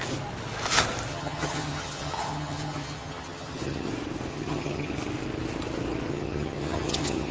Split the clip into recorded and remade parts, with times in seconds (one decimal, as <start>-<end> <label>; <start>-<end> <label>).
0.0-1.1 recorded; 1.1-3.9 remade; 3.9-4.3 recorded; 4.3-4.9 remade; 4.9-6.1 recorded; 6.1-7.3 remade